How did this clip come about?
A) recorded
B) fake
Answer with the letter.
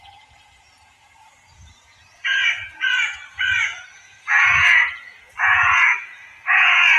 B